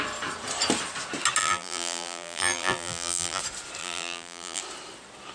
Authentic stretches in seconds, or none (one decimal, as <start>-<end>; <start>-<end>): 0.0-1.4; 3.4-3.8; 4.6-5.3

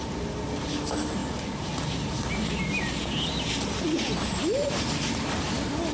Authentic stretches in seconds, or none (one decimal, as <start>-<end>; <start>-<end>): 0.0-5.9

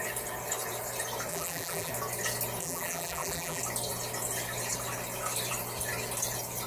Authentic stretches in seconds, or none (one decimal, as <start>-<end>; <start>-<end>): 0.0-1.3; 1.9-2.6; 3.6-6.7

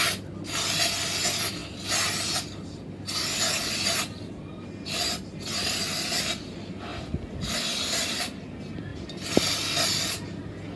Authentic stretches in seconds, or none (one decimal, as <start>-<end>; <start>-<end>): 0.0-10.8

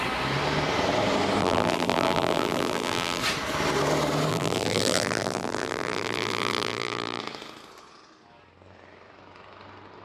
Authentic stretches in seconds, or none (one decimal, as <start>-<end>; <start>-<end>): 0.0-1.4; 3.2-4.3; 7.2-10.0